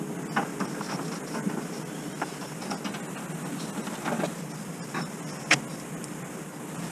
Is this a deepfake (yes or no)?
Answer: no